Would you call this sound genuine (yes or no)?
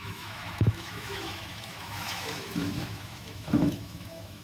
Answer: no